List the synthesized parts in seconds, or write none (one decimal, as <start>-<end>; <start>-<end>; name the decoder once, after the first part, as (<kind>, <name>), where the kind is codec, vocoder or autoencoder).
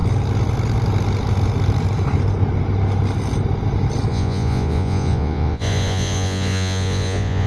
4.1-7.5 (vocoder, Vocos)